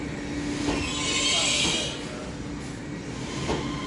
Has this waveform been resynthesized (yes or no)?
no